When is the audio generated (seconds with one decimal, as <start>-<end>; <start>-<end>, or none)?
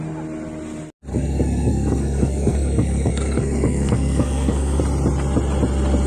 1.1-4.8